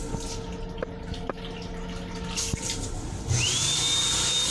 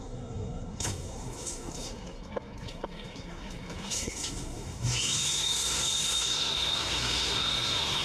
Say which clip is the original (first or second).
first